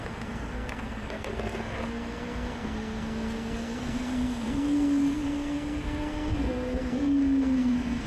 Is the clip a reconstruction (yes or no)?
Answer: yes